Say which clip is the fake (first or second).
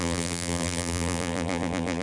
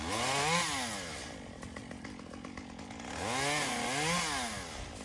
first